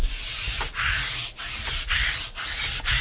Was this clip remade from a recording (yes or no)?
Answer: no